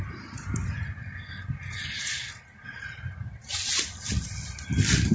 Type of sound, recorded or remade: recorded